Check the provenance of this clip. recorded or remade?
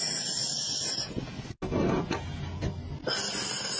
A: recorded